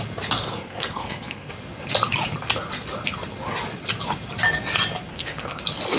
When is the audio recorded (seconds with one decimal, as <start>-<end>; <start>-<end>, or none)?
0.0-0.5; 1.5-5.1; 5.6-6.0